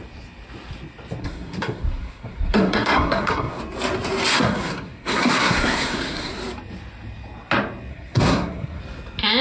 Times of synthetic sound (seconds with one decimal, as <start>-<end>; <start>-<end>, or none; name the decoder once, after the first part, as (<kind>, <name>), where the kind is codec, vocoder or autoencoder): 1.2-3.6 (codec, SNAC); 4.3-6.3; 7.9-8.8